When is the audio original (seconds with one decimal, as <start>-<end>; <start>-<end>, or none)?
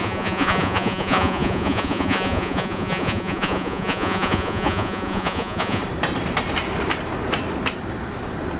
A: 5.8-8.6